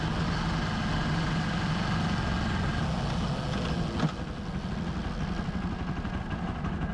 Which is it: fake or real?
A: real